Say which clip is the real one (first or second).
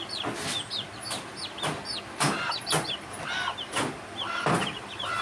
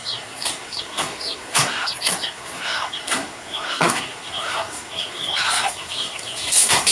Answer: first